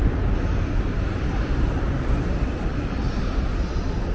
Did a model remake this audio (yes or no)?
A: no